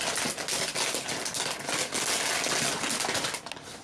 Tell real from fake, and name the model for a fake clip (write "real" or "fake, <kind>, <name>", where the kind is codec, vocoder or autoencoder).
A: real